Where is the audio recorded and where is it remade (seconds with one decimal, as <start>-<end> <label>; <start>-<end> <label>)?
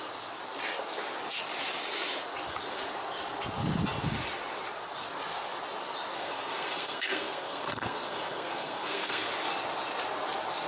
0.0-6.2 recorded; 6.2-9.3 remade; 9.3-10.7 recorded